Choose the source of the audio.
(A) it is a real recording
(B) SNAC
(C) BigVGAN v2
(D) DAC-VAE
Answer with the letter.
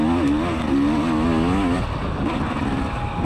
A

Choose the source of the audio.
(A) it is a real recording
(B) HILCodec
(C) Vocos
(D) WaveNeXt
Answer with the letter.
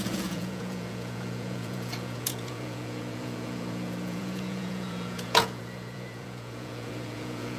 C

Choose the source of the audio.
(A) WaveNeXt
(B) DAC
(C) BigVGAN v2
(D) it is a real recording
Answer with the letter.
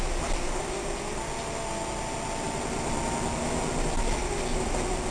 D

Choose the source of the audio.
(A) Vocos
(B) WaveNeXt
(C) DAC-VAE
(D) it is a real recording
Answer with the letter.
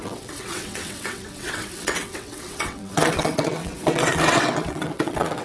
B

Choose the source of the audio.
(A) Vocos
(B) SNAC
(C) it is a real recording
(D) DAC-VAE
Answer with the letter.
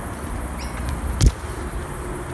C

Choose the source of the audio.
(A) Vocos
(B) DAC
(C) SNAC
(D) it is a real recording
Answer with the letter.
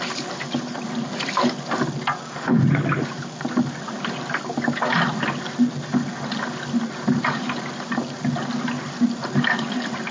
D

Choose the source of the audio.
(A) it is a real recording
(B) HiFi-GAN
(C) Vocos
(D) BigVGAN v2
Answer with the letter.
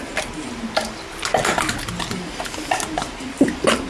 A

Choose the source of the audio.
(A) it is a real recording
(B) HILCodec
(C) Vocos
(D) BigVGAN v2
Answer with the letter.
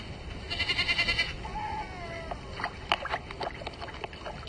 A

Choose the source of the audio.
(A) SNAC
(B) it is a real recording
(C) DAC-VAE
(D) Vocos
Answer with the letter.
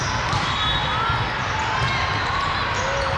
B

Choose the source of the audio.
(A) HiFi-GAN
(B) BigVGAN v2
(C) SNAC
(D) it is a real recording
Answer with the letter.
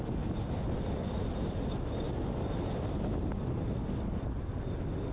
D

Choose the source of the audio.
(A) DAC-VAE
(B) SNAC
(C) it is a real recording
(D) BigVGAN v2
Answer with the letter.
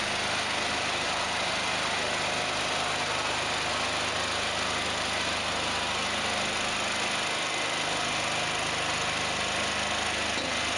C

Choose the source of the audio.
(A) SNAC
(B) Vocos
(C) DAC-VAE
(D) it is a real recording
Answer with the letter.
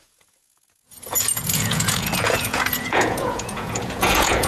B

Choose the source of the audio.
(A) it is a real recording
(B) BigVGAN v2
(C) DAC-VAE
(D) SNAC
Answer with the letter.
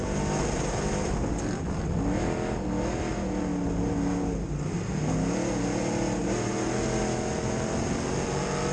A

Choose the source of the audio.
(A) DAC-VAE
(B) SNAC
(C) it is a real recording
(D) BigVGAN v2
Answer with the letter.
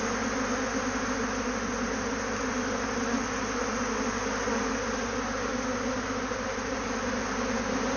C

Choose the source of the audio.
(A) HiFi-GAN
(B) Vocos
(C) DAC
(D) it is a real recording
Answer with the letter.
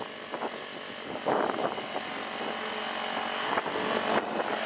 D